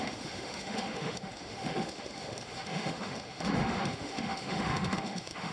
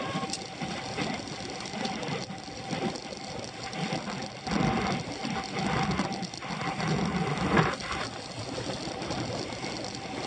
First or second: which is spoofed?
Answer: first